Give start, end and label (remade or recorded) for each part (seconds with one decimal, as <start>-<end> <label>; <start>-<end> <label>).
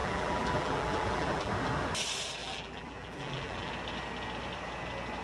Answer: 0.0-1.5 remade; 1.5-2.4 recorded; 2.4-3.7 remade; 3.7-5.2 recorded